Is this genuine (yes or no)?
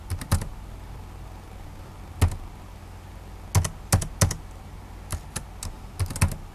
yes